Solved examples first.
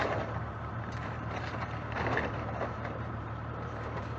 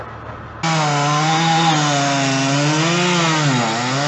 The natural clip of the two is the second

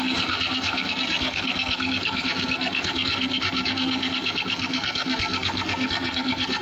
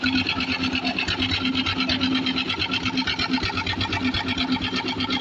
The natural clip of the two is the second